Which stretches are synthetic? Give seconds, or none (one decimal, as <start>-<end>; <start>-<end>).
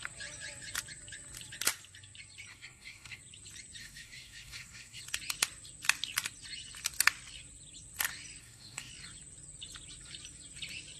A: 2.5-3.2; 3.8-5.0; 8.4-8.9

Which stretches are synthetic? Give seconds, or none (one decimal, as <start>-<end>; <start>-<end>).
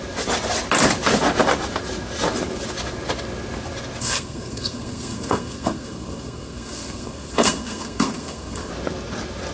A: 4.0-8.7